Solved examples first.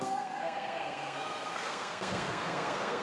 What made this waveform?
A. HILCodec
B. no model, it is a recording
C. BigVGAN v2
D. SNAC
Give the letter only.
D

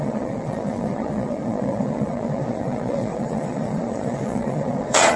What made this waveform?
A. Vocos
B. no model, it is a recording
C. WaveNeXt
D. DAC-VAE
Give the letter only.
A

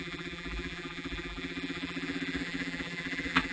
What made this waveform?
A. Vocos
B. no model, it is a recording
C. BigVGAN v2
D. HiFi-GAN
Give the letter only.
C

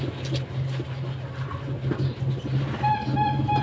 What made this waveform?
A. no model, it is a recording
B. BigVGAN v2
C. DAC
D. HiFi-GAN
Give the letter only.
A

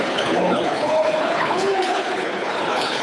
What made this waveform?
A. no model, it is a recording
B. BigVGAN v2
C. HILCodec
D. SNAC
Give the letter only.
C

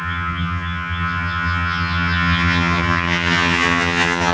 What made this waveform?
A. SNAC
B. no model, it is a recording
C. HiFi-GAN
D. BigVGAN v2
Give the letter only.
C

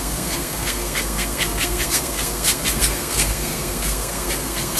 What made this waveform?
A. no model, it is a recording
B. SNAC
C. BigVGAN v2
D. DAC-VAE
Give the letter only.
B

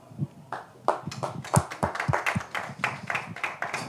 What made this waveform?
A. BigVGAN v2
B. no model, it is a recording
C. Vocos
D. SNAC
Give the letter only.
B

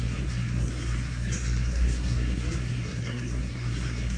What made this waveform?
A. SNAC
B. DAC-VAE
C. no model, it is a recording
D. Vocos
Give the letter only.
A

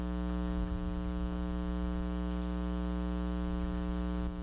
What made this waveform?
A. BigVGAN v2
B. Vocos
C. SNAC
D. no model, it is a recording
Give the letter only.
D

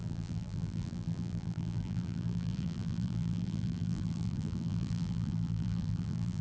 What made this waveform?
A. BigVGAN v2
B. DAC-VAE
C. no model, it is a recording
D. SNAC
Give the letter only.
A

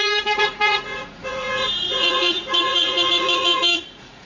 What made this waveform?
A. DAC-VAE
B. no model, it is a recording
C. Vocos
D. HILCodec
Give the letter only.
C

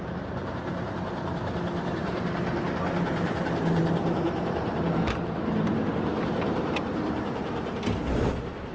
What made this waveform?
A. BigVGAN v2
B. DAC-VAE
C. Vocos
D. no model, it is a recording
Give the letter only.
A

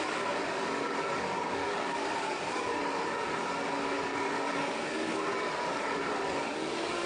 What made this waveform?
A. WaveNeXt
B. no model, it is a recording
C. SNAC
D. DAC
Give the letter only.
D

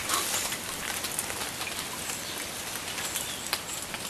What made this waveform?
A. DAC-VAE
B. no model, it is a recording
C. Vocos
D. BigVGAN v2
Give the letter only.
B